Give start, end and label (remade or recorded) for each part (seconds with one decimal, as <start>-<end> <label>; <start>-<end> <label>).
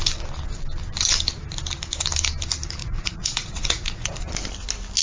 0.0-2.8 recorded; 2.8-4.2 remade; 4.2-5.0 recorded